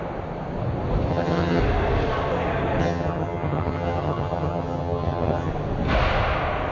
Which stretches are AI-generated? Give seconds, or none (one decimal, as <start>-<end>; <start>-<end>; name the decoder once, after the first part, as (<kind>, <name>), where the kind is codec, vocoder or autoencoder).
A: 1.1-1.6 (vocoder, HiFi-GAN); 2.8-5.5